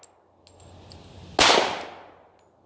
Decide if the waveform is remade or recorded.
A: recorded